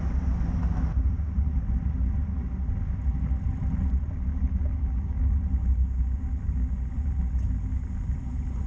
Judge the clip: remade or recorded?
recorded